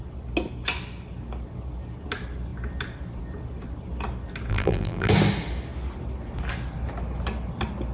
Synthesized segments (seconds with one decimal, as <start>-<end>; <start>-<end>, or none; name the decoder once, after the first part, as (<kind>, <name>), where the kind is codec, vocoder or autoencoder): 4.5-5.1 (vocoder, BigVGAN v2)